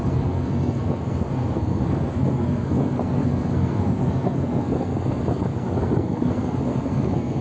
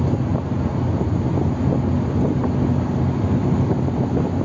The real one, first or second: second